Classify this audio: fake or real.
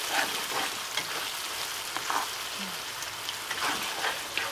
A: real